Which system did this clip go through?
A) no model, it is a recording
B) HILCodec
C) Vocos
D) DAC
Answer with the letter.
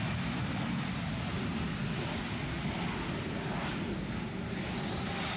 A